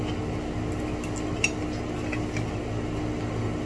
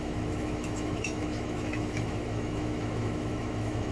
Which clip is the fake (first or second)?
second